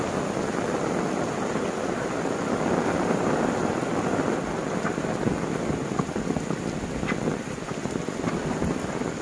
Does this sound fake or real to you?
real